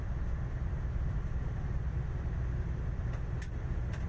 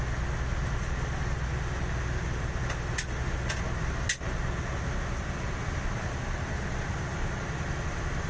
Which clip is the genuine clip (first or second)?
second